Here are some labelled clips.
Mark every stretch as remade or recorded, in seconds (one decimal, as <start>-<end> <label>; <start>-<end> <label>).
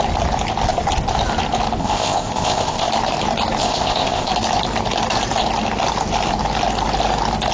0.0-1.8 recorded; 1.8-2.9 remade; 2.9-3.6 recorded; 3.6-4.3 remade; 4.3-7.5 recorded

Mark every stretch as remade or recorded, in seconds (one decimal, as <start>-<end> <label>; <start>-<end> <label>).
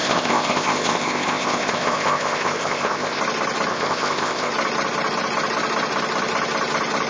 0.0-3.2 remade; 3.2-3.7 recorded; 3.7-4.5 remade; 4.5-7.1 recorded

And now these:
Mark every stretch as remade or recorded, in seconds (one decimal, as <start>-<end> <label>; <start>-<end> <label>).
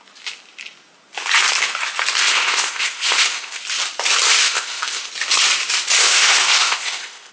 0.0-2.2 recorded; 2.2-3.6 remade; 3.6-4.4 recorded; 4.4-5.1 remade; 5.1-6.0 recorded; 6.0-7.3 remade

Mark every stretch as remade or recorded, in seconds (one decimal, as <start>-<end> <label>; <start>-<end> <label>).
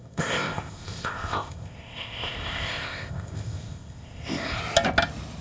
0.0-4.6 remade; 4.6-5.4 recorded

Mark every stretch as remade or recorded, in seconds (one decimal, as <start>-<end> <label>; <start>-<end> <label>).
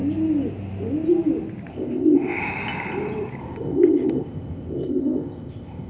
0.0-1.7 recorded; 1.7-2.4 remade; 2.4-3.4 recorded; 3.4-5.9 remade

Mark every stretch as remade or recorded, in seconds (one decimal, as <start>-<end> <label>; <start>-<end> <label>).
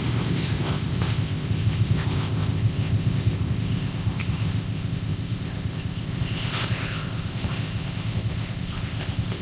0.0-9.4 remade